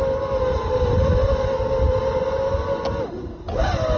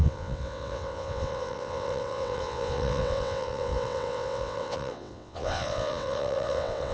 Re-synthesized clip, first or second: second